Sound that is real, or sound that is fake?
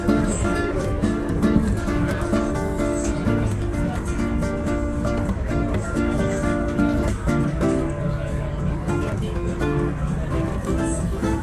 fake